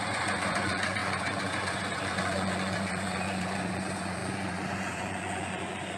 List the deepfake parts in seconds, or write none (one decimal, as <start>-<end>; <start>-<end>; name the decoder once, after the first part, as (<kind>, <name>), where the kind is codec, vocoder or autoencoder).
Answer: 0.0-6.0 (vocoder, Vocos)